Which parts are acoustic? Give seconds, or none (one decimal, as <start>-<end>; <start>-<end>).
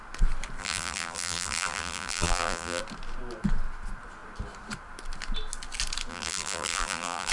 0.0-0.6; 2.8-6.1